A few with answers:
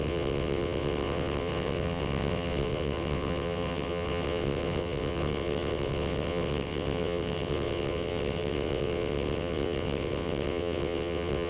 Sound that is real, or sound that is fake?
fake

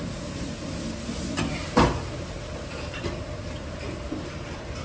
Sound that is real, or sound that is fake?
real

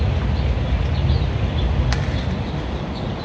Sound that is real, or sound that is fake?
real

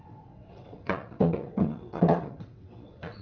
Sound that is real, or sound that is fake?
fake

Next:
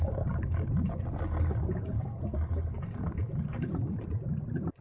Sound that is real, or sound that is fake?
real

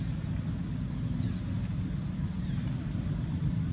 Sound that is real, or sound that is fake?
real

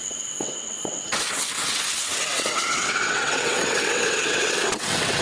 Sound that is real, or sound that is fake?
fake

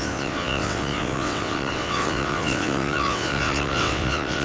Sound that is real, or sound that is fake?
fake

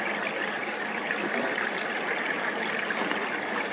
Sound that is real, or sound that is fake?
real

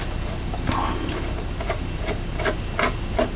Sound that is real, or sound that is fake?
real